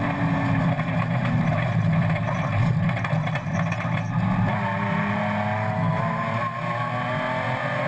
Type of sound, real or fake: real